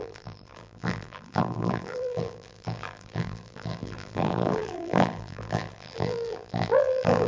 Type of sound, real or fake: fake